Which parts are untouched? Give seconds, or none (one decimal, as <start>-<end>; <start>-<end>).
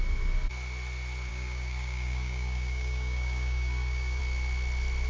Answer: 0.0-1.3; 4.2-5.1